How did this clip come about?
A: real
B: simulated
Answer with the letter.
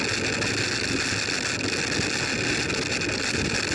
A